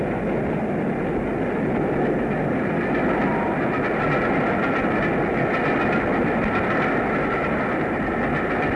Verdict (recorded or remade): recorded